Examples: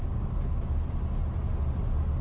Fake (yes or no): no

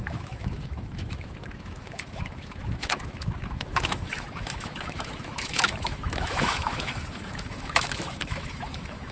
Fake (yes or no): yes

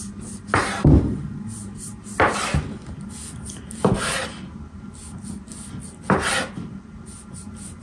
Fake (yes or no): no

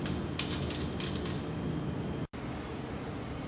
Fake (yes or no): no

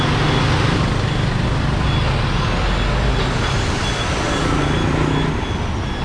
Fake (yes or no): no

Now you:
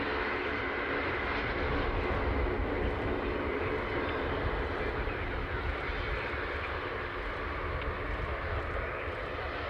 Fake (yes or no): no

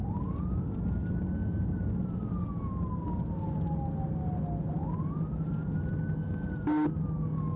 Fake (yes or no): no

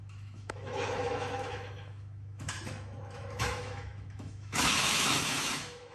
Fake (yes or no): yes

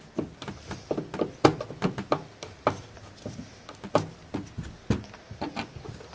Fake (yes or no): no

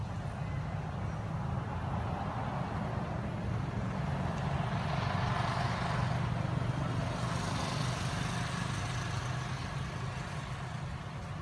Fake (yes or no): no